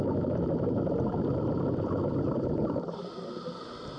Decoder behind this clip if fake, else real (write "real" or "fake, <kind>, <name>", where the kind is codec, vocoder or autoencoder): real